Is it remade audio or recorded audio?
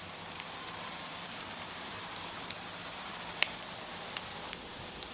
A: remade